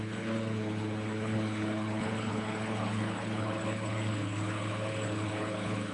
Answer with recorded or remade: remade